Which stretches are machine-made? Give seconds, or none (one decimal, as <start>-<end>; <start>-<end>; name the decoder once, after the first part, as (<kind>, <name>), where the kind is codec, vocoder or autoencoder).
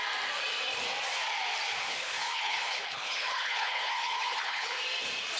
1.8-4.8 (codec, HILCodec)